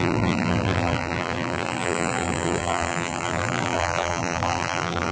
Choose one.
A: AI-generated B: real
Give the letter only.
A